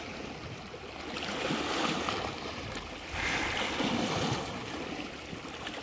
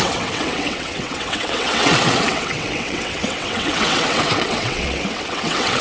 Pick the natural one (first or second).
first